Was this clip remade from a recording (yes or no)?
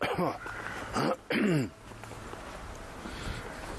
no